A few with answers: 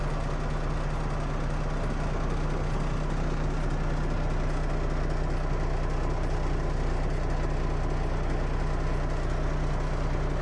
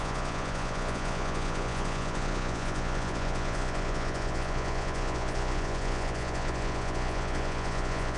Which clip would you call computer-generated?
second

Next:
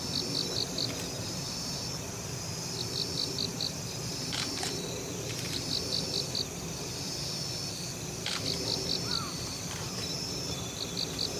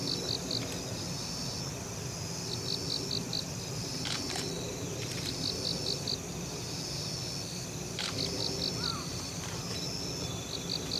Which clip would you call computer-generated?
first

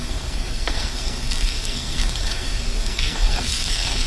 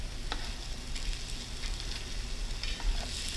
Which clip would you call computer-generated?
first